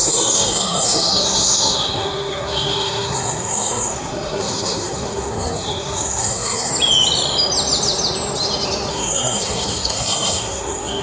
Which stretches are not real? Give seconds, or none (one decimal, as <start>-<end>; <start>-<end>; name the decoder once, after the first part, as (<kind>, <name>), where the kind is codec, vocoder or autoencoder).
0.0-6.7 (codec, SNAC); 8.9-11.0